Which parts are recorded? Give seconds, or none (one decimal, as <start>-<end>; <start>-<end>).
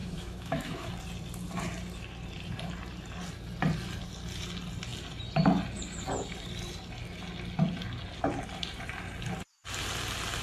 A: 0.9-10.4